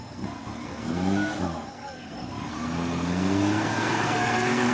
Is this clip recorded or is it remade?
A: remade